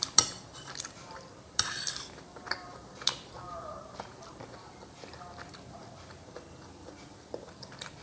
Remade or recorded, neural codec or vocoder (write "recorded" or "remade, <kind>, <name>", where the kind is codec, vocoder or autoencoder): remade, vocoder, BigVGAN v2